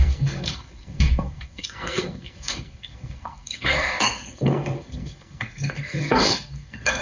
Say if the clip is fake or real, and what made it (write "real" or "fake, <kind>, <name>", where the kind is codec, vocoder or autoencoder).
fake, codec, SNAC